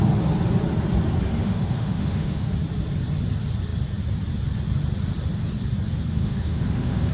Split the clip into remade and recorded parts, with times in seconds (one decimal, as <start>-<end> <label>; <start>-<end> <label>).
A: 0.0-1.4 recorded; 1.4-2.4 remade; 2.4-6.1 recorded; 6.1-7.1 remade